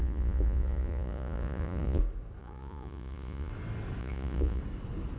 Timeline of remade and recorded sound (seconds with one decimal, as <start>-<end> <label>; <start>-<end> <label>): 0.0-2.0 remade; 2.0-2.4 recorded; 2.4-3.5 remade; 3.5-4.0 recorded; 4.0-4.6 remade; 4.6-5.2 recorded